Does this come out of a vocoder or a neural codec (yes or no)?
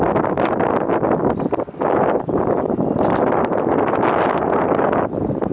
no